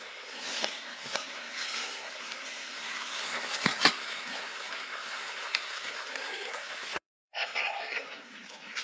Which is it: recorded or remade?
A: remade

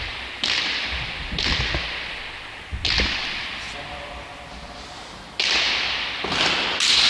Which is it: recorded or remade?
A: recorded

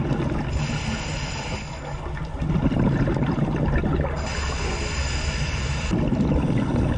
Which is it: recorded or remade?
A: recorded